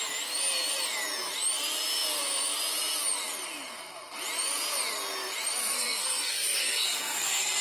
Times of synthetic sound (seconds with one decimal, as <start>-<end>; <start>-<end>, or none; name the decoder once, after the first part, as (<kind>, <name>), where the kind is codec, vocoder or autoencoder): 5.6-7.6 (codec, SNAC)

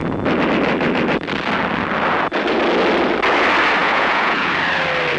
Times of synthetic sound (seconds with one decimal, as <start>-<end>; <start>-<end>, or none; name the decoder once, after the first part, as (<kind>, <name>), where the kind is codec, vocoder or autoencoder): 3.8-4.5 (vocoder, Vocos)

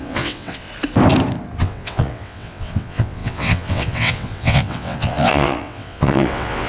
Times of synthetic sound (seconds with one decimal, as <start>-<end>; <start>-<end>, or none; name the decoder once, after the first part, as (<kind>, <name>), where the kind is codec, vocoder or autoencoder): 0.0-0.7 (vocoder, WaveNeXt); 1.6-6.7

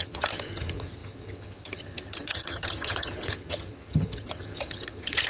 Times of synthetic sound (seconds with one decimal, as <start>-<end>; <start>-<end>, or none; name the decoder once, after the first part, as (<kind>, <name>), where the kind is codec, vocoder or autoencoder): 0.0-5.3 (vocoder, HiFi-GAN)

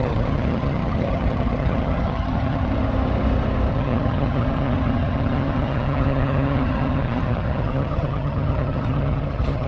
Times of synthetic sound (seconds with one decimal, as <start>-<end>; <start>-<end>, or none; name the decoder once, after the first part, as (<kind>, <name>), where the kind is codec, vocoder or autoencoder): 0.0-2.7 (vocoder, HiFi-GAN); 3.7-9.7